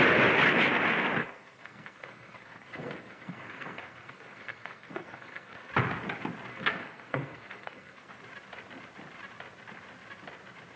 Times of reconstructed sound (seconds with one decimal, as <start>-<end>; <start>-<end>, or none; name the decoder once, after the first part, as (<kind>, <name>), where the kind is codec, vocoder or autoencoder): 1.2-5.7 (codec, SNAC); 6.5-8.2

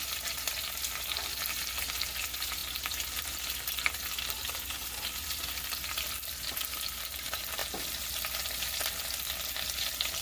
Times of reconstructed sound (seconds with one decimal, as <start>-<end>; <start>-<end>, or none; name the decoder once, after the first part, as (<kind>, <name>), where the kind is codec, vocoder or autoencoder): none

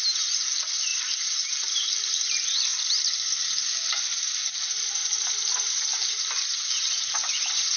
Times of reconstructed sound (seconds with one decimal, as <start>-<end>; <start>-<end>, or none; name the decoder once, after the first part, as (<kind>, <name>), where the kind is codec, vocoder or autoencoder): 0.0-2.7 (vocoder, BigVGAN v2); 4.0-5.0; 5.7-7.8

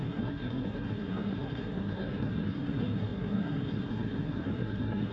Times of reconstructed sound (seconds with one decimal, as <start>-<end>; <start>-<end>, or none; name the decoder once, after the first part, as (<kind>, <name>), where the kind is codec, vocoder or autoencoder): 0.0-5.1 (codec, SNAC)

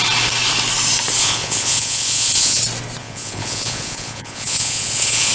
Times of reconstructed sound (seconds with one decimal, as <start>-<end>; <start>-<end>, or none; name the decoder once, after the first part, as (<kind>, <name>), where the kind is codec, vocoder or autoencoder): 1.2-2.6 (vocoder, Vocos); 3.0-5.3

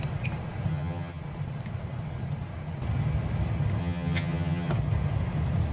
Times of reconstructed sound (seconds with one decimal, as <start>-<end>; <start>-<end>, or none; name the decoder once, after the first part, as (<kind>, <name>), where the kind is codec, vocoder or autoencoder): 0.7-1.2 (vocoder, HiFi-GAN); 3.8-4.7

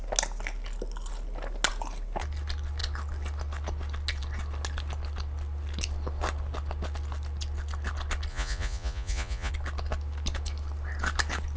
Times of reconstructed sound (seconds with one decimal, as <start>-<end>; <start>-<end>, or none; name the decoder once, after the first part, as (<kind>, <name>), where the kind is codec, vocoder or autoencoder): 8.3-9.5 (vocoder, Vocos)